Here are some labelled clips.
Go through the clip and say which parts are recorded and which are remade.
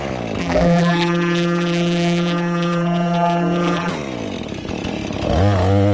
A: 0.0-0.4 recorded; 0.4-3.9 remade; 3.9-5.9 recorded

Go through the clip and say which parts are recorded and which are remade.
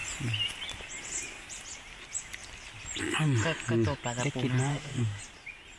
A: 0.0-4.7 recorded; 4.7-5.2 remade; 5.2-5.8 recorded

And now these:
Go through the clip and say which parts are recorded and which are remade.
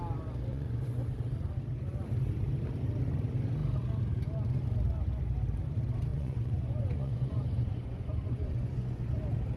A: 0.0-0.5 recorded; 0.5-1.0 remade; 1.0-6.1 recorded; 6.1-9.2 remade; 9.2-9.6 recorded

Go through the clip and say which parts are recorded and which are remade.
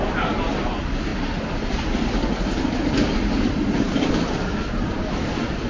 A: 0.0-5.7 recorded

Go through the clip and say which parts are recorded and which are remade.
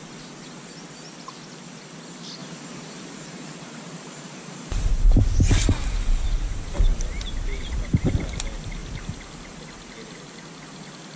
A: 0.0-2.4 recorded; 2.4-4.9 remade; 4.9-6.9 recorded; 6.9-8.1 remade; 8.1-11.2 recorded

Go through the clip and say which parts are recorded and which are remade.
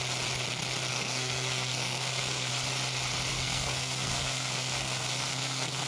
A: 0.0-0.9 recorded; 0.9-2.5 remade; 2.5-3.3 recorded; 3.3-5.9 remade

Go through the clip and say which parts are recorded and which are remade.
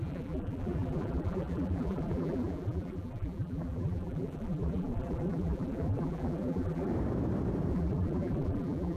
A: 0.0-6.9 remade; 6.9-7.7 recorded; 7.7-9.0 remade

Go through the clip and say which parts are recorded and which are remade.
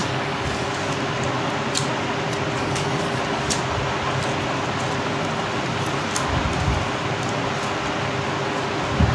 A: 0.0-0.7 remade; 0.7-2.6 recorded; 2.6-3.2 remade; 3.2-9.1 recorded